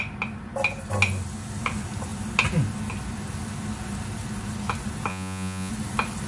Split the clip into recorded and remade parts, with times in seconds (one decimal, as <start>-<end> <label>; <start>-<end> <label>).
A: 0.0-5.1 recorded; 5.1-5.7 remade; 5.7-6.3 recorded

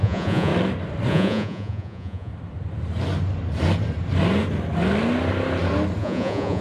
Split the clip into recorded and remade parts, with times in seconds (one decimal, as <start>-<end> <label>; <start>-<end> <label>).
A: 0.0-0.5 remade; 0.5-1.1 recorded; 1.1-2.3 remade; 2.3-6.0 recorded; 6.0-6.6 remade

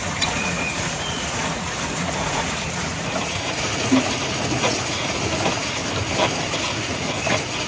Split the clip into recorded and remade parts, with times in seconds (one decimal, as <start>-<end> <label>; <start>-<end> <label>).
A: 0.0-5.8 remade; 5.8-6.6 recorded; 6.6-7.7 remade

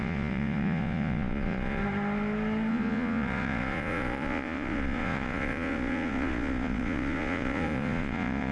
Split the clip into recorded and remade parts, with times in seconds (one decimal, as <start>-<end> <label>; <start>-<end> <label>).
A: 0.0-1.8 remade; 1.8-2.7 recorded; 2.7-8.5 remade

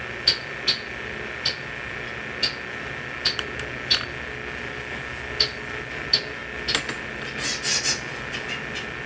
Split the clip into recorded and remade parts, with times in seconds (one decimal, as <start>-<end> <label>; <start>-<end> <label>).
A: 0.0-9.1 recorded

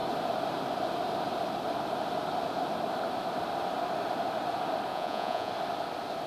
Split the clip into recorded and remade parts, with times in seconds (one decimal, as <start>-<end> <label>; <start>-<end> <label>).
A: 0.0-4.9 recorded; 4.9-5.5 remade; 5.5-6.3 recorded

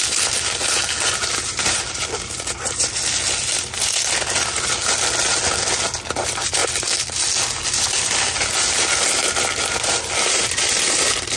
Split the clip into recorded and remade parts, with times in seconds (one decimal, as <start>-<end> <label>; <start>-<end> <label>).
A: 0.0-11.4 recorded

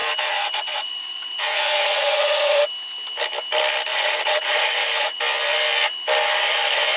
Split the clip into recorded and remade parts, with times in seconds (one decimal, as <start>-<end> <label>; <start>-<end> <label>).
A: 0.0-2.6 remade; 2.6-3.9 recorded; 3.9-5.2 remade; 5.2-7.0 recorded